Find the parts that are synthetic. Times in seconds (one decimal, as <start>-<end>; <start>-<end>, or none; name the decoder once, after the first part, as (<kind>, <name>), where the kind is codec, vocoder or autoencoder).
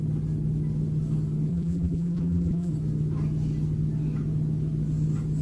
1.5-2.7 (vocoder, BigVGAN v2)